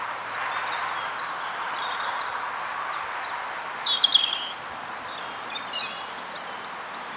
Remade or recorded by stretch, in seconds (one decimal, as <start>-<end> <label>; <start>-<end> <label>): 0.0-7.2 recorded